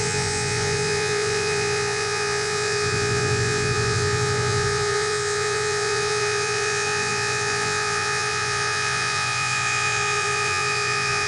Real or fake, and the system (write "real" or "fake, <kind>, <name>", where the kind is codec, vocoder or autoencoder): fake, vocoder, Vocos